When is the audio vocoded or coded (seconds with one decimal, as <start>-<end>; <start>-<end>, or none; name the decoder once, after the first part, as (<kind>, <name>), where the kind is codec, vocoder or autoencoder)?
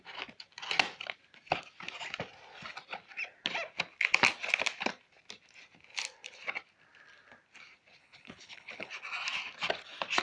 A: 8.0-8.9 (codec, HILCodec)